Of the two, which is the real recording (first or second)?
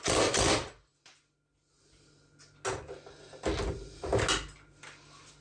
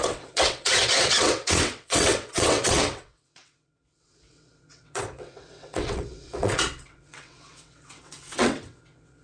first